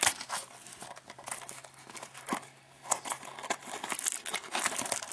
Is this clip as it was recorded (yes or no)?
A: yes